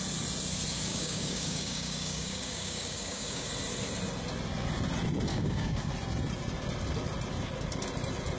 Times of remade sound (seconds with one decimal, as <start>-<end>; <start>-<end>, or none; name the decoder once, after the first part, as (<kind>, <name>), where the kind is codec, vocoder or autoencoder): 0.9-3.5 (codec, DAC); 5.3-5.9